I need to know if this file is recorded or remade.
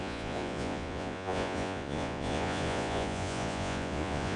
remade